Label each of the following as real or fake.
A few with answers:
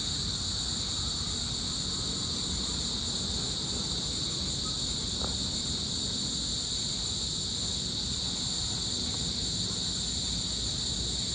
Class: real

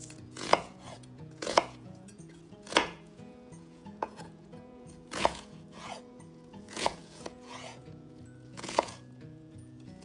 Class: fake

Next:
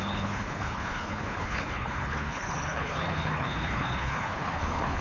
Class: fake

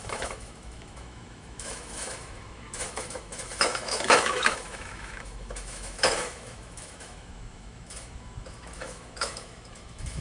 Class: fake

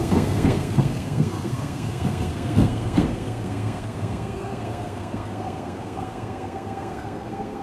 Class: fake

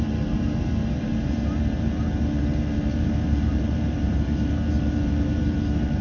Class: fake